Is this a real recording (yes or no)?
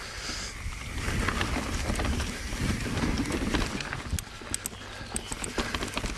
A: yes